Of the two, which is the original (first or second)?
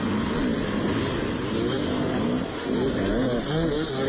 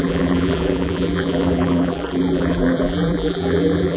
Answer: first